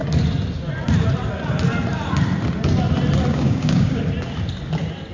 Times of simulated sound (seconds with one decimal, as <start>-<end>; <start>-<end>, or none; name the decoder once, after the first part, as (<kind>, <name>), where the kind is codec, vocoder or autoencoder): 3.3-4.0 (codec, DAC)